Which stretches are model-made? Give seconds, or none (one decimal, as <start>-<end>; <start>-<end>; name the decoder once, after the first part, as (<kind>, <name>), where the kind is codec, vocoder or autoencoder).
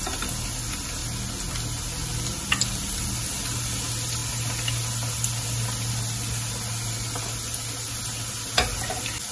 none